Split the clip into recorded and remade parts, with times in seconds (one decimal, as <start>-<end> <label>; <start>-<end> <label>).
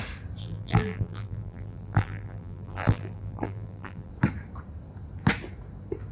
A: 0.0-0.4 recorded; 0.4-4.1 remade; 4.1-6.1 recorded